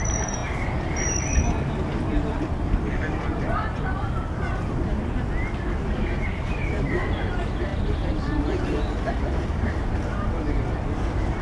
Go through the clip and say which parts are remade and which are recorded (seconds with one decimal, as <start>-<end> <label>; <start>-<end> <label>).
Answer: 0.0-0.4 recorded; 0.4-1.2 remade; 1.2-2.1 recorded; 2.1-6.9 remade; 6.9-7.7 recorded; 7.7-8.6 remade; 8.6-11.4 recorded

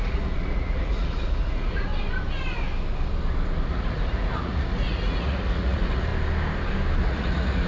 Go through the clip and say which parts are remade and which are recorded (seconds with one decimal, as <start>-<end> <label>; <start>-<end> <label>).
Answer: 0.0-1.9 remade; 1.9-3.7 recorded; 3.7-6.1 remade; 6.1-7.0 recorded; 7.0-7.7 remade

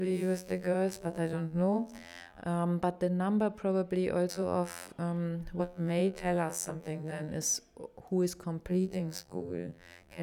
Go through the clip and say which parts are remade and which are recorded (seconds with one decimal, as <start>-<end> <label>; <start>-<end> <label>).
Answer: 0.0-2.4 remade; 2.4-4.3 recorded; 4.3-4.9 remade; 4.9-5.6 recorded; 5.6-7.3 remade; 7.3-8.7 recorded; 8.7-10.2 remade

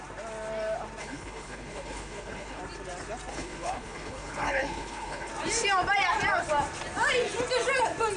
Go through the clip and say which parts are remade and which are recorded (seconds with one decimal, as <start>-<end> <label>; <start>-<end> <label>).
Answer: 0.0-1.0 recorded; 1.0-2.6 remade; 2.6-3.3 recorded; 3.3-5.3 remade; 5.3-8.2 recorded

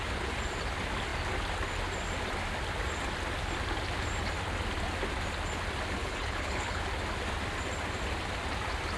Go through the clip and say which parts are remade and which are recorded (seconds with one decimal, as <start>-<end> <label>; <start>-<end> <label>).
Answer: 0.0-6.0 recorded; 6.0-6.8 remade; 6.8-9.0 recorded

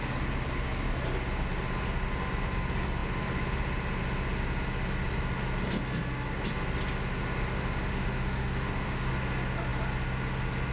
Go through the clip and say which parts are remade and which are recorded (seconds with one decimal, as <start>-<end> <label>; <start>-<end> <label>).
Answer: 0.0-7.5 recorded; 7.5-9.1 remade; 9.1-10.7 recorded

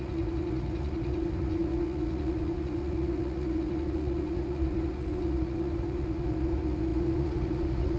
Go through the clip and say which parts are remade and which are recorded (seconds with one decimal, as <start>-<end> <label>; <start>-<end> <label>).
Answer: 0.0-8.0 remade

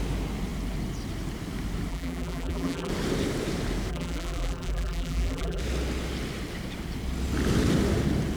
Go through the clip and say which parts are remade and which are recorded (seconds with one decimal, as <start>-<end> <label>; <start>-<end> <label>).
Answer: 0.0-1.9 recorded; 1.9-2.9 remade; 2.9-3.9 recorded; 3.9-5.6 remade; 5.6-8.4 recorded